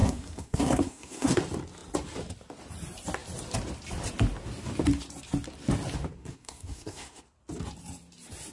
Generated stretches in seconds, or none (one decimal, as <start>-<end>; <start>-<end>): 0.0-1.4; 6.2-7.2